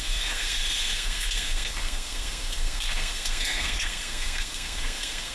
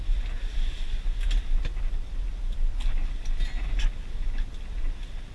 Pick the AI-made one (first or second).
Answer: first